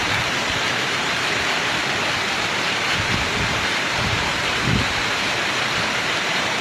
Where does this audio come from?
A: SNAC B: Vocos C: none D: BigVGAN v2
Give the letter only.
D